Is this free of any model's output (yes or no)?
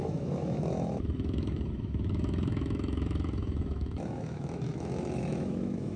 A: no